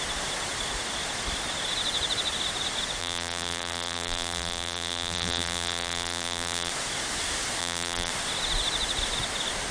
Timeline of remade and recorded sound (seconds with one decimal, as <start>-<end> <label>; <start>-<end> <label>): 0.0-3.0 recorded; 3.0-6.7 remade; 6.7-7.6 recorded; 7.6-8.1 remade; 8.1-9.7 recorded